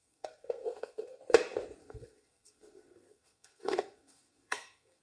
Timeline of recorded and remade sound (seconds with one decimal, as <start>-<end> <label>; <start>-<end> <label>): 0.0-1.2 remade; 1.2-1.8 recorded; 1.8-5.0 remade